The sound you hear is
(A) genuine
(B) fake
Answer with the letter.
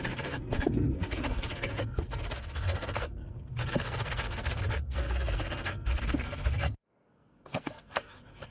B